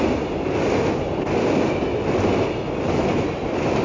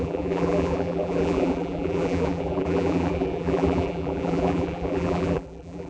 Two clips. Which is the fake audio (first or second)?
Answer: second